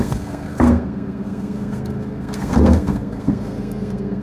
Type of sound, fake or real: fake